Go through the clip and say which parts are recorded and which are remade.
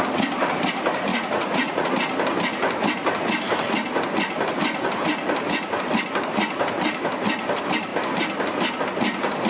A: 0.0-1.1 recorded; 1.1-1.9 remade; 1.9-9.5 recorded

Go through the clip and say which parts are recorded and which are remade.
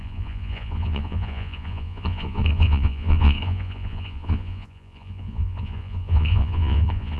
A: 0.0-7.2 remade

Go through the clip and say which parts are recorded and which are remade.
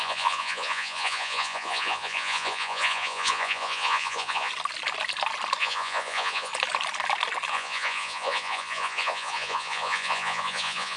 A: 0.0-4.5 remade; 4.5-5.6 recorded; 5.6-6.5 remade; 6.5-7.5 recorded; 7.5-11.0 remade